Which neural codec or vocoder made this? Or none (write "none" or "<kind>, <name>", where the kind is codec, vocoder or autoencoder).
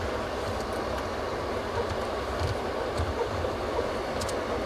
none